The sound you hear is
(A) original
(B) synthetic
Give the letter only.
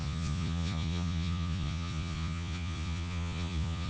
B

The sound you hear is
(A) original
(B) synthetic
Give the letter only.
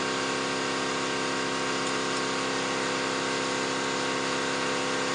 A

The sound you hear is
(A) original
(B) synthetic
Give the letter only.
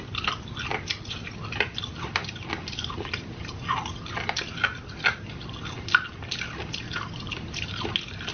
A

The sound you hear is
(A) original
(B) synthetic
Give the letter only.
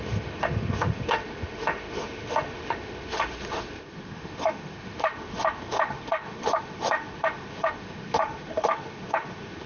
B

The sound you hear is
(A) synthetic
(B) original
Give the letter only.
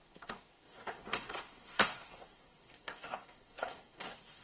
A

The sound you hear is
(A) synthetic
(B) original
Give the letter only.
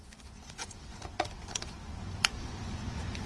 A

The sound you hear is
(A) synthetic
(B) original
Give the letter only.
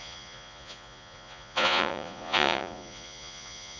A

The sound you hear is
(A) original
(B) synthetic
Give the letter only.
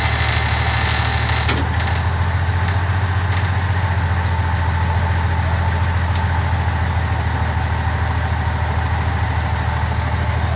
A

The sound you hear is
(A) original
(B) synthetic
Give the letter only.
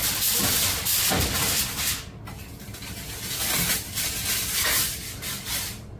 A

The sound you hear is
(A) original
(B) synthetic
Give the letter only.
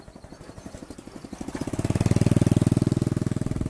A